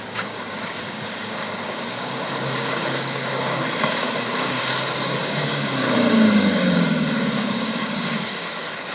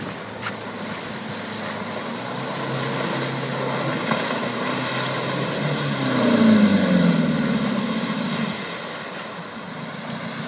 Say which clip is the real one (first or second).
second